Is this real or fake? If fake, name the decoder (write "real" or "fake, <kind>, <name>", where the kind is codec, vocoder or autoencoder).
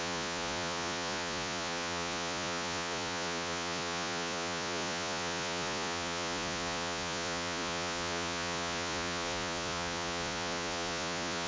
fake, vocoder, Vocos